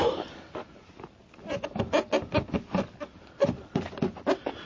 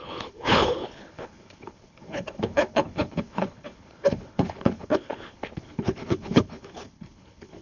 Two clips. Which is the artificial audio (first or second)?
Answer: second